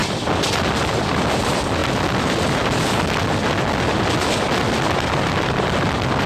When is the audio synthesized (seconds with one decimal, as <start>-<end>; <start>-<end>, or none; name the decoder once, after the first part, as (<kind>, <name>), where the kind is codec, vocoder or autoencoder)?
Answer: none